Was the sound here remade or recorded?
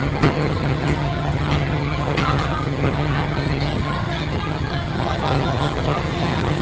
remade